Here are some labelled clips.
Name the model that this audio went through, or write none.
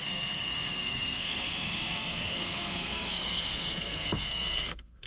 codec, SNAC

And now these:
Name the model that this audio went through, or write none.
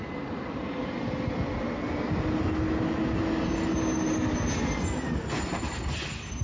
none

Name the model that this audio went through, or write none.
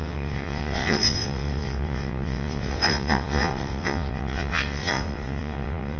vocoder, WaveNeXt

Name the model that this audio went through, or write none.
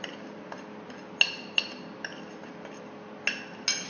none